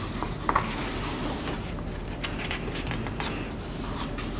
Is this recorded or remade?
recorded